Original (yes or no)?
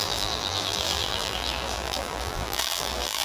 no